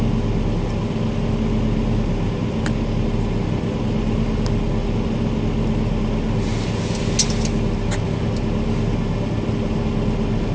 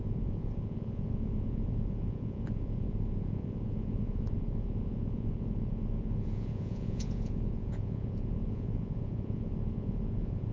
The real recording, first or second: first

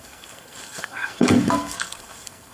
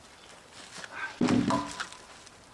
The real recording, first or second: second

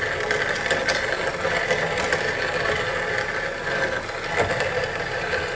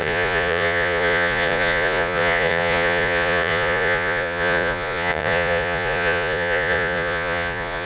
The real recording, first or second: first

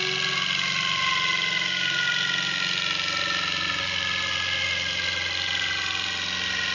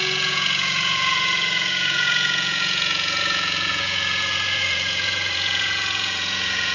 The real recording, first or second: first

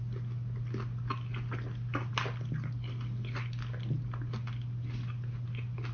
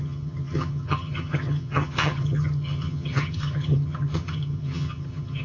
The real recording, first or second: first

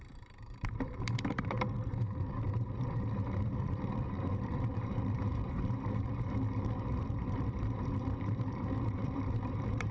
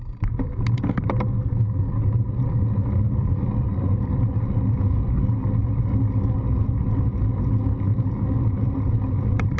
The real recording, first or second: second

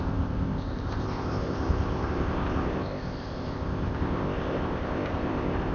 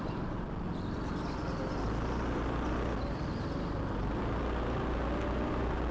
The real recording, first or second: second